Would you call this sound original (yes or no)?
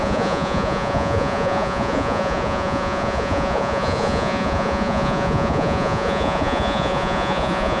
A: no